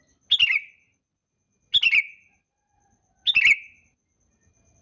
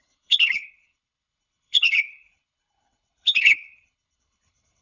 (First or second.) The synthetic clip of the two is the second